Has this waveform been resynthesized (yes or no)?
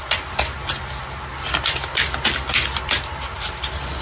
no